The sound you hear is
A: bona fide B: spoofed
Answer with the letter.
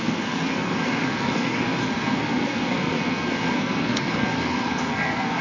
B